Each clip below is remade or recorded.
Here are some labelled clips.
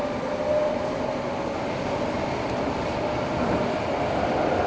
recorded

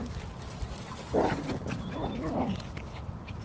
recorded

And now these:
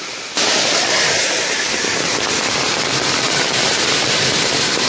recorded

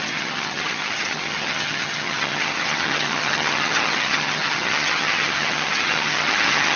remade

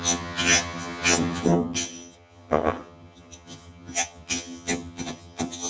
remade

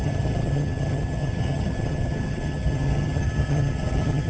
remade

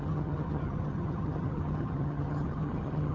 remade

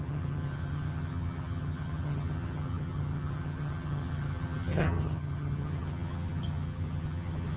remade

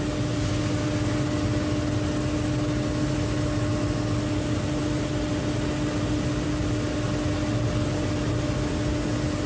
recorded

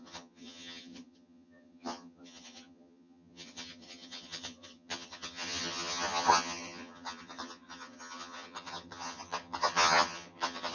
remade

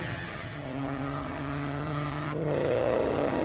remade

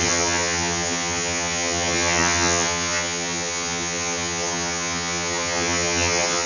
remade